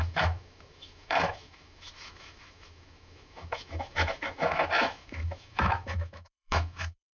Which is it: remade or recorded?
remade